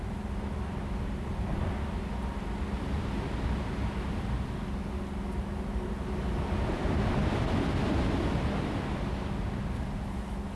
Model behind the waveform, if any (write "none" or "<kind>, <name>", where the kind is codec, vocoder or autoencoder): none